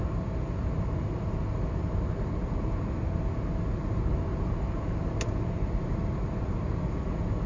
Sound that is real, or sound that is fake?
real